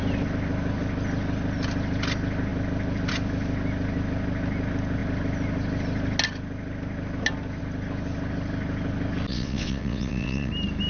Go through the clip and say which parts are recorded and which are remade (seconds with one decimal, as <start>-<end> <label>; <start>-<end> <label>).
0.0-9.3 recorded; 9.3-10.5 remade; 10.5-10.9 recorded